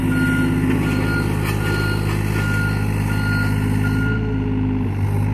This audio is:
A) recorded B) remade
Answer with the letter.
A